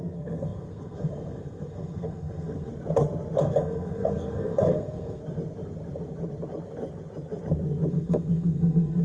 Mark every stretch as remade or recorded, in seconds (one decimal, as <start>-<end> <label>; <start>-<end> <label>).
0.0-2.7 remade; 2.7-3.4 recorded; 3.4-5.2 remade; 5.2-7.9 recorded; 7.9-9.0 remade